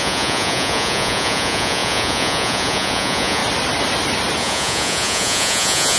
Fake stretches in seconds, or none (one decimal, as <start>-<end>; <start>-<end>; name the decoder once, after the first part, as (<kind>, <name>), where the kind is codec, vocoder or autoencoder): 0.0-3.4 (vocoder, Vocos); 4.4-6.0